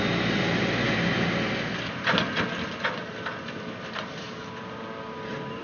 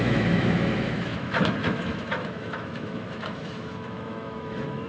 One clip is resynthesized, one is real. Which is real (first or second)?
first